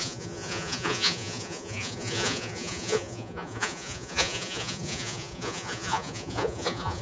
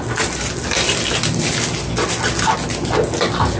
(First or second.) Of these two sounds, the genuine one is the second